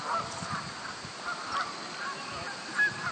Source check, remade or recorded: recorded